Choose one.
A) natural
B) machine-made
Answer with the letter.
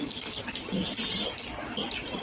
A